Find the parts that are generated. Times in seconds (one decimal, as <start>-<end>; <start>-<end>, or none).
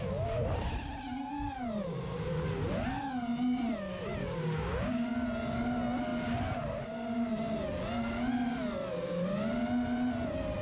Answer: 4.2-5.1